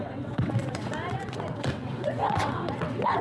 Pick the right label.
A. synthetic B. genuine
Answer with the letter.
A